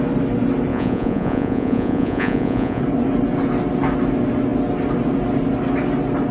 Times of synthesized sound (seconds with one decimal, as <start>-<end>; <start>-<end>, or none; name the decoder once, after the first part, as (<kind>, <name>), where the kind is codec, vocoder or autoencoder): 0.7-2.8 (vocoder, Vocos)